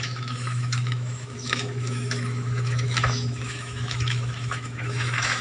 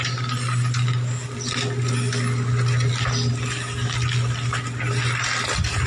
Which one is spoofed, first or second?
first